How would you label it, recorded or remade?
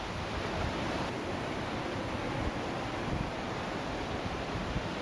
remade